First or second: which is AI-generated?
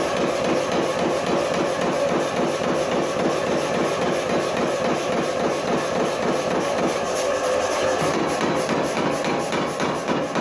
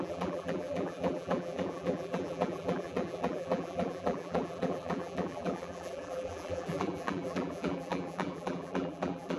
second